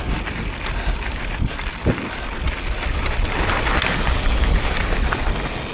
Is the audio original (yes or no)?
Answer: yes